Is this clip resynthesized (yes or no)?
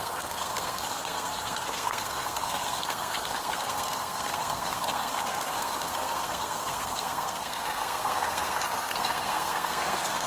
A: yes